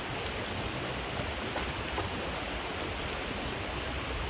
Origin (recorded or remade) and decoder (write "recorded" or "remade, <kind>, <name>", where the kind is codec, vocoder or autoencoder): recorded